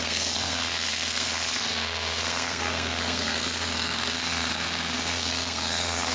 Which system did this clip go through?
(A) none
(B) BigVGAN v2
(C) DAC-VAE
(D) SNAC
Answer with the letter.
D